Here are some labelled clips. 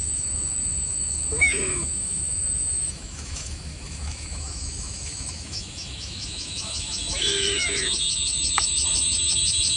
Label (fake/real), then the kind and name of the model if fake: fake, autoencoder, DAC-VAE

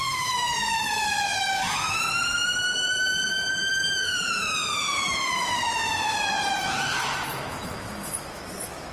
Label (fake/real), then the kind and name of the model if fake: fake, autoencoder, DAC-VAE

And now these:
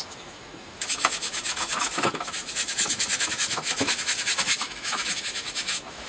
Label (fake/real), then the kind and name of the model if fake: fake, autoencoder, DAC-VAE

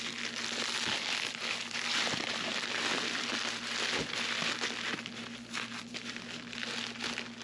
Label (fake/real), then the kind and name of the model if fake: real